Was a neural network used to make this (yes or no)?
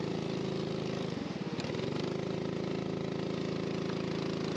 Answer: no